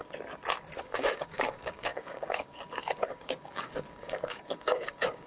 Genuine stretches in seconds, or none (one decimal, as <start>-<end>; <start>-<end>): 0.0-0.8